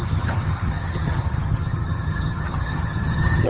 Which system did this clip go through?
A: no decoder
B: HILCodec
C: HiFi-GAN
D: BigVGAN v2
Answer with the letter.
C